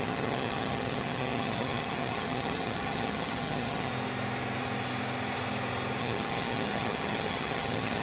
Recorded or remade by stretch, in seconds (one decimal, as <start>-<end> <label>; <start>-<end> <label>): 0.0-3.9 remade; 3.9-6.0 recorded; 6.0-8.0 remade